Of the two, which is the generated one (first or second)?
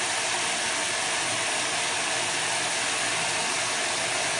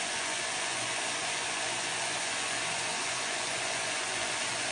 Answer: second